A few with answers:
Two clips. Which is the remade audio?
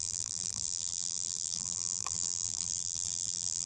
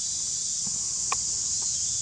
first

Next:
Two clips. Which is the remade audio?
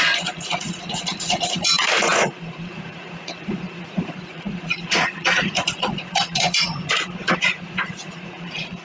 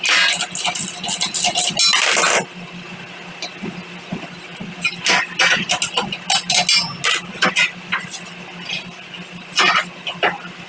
first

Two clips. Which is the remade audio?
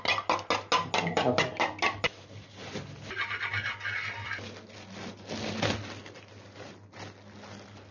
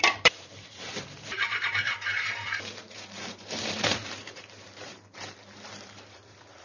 second